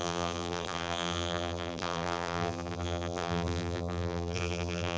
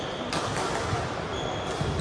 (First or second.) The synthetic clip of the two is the first